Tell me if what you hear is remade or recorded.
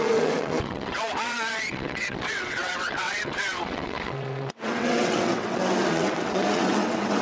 remade